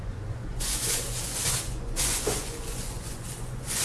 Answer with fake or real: fake